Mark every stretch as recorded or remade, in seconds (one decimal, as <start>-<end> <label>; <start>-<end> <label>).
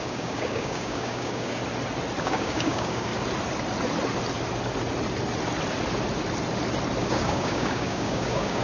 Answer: 0.0-1.6 remade; 1.6-2.2 recorded; 2.2-3.1 remade; 3.1-7.0 recorded; 7.0-8.6 remade